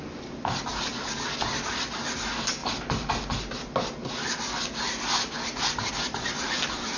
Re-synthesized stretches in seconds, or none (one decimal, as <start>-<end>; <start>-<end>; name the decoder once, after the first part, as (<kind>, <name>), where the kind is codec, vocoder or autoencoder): none